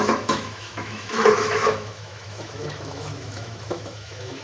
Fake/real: fake